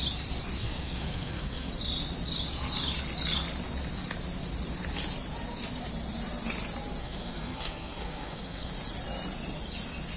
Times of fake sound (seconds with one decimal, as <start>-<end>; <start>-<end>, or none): 0.6-1.7; 7.0-8.7